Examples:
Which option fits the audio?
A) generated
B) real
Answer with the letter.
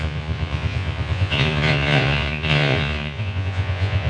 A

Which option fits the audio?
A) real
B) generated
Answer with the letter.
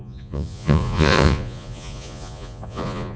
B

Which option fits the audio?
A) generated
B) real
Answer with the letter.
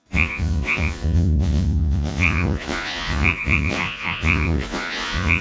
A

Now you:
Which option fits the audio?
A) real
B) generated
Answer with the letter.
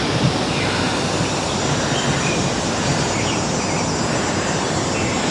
A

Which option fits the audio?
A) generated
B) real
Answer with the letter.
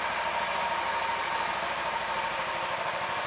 B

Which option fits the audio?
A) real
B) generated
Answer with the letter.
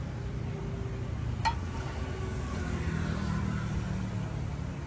A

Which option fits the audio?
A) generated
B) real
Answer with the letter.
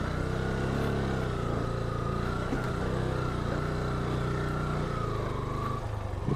B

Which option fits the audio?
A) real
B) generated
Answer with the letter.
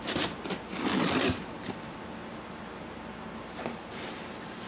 A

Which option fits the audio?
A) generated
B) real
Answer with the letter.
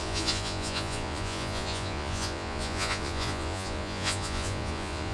A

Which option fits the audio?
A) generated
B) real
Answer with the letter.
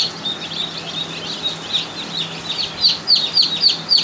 B